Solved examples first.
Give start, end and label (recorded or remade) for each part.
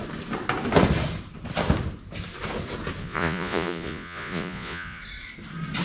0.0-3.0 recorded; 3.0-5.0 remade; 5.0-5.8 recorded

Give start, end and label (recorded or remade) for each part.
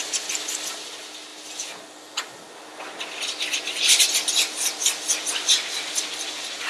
0.0-6.7 recorded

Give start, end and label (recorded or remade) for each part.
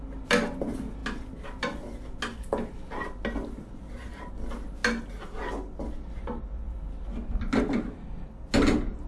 0.0-9.1 recorded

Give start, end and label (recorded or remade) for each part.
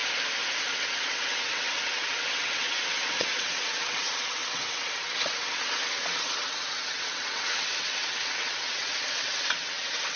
0.0-0.7 recorded; 0.7-10.2 remade